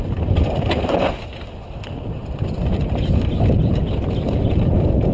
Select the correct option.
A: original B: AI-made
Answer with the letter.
A